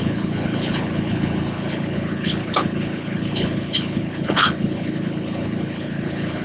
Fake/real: fake